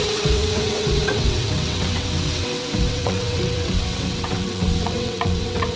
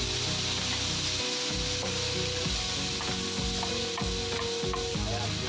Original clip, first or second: second